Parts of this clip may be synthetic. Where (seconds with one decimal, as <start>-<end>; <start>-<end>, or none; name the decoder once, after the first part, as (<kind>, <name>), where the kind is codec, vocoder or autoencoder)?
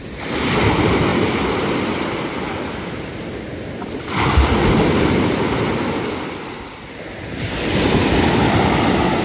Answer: none